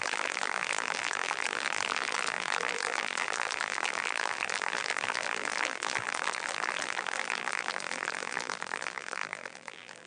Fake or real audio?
fake